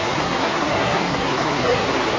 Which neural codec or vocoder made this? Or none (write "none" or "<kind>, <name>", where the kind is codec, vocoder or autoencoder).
codec, SNAC